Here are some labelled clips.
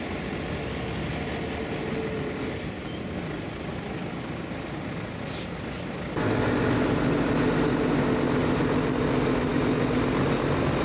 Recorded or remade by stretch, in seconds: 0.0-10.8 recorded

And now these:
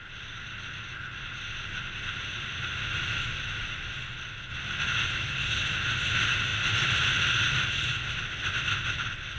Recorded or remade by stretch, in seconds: 0.0-9.4 recorded